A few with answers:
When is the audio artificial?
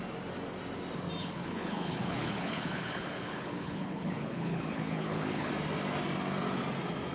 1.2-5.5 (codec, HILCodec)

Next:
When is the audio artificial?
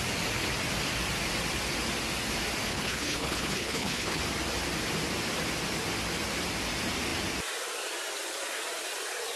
2.7-4.2 (codec, HILCodec)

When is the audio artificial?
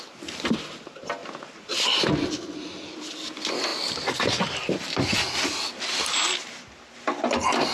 none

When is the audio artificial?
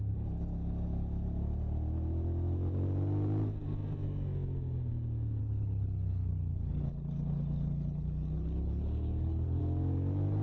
5.4-9.6 (codec, HILCodec)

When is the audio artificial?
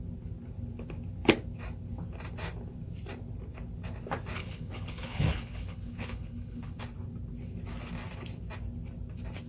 4.4-6.8 (codec, HILCodec)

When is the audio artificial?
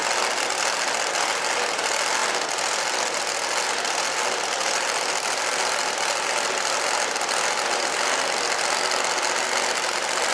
none